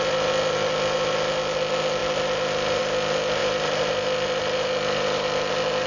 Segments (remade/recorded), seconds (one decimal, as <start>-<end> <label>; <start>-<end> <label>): 0.0-5.9 recorded